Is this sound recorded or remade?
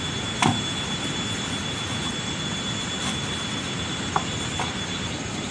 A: recorded